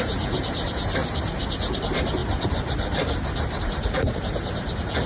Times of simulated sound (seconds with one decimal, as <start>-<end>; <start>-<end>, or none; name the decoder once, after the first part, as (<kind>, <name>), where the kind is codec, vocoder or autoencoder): 0.0-1.0 (vocoder, BigVGAN v2); 1.8-2.2; 3.6-5.1